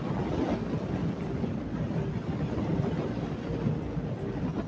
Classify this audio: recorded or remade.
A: recorded